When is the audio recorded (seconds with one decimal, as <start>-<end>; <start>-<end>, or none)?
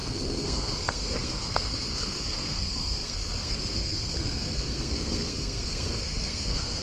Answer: none